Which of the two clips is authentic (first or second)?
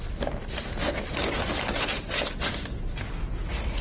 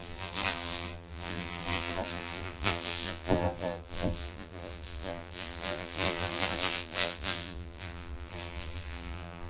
first